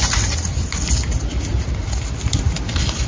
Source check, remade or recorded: recorded